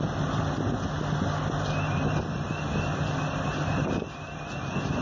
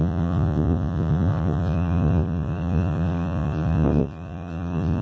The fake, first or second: second